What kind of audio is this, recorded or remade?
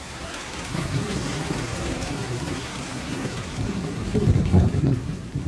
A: remade